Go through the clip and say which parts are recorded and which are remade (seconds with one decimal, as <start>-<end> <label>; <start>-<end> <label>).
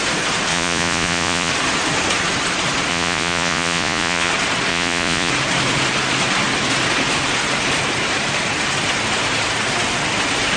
0.0-0.5 recorded; 0.5-1.5 remade; 1.5-2.9 recorded; 2.9-4.3 remade; 4.3-4.7 recorded; 4.7-5.3 remade; 5.3-10.6 recorded